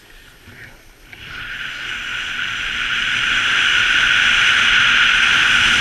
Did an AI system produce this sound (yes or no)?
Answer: no